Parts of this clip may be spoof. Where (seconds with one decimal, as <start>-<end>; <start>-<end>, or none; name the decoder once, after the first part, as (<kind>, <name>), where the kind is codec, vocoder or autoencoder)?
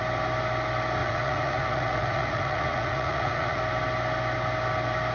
1.0-3.6 (vocoder, Vocos)